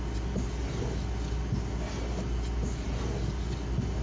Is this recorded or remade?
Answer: recorded